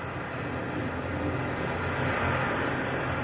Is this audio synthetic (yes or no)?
no